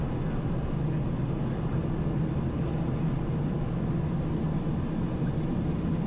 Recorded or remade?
recorded